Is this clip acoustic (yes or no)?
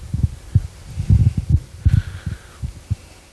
yes